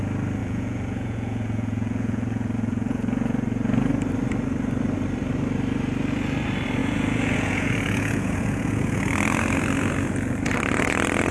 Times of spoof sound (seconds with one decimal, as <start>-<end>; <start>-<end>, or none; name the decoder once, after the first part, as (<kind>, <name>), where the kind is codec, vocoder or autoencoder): 0.4-3.9 (vocoder, Vocos); 6.8-9.0